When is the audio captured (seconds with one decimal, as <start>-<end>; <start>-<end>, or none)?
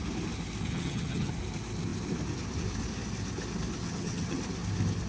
0.0-0.7; 1.3-3.8; 4.4-5.1